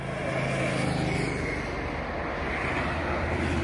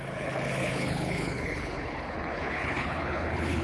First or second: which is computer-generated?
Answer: second